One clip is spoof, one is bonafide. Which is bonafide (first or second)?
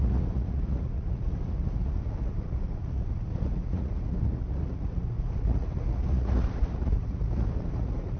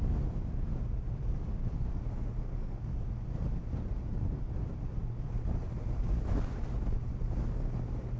second